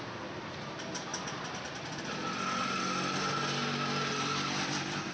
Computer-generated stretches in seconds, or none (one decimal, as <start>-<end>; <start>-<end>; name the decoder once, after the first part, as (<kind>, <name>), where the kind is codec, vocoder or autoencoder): none